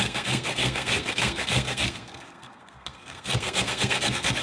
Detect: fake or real fake